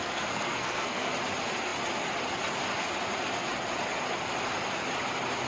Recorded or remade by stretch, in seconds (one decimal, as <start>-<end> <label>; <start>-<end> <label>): 0.0-1.1 remade; 1.1-5.5 recorded